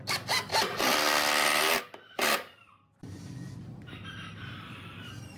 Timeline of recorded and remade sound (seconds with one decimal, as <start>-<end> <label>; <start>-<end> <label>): 0.0-2.2 recorded; 2.2-5.4 remade